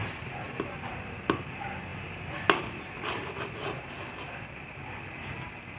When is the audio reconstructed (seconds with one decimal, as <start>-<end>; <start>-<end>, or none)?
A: none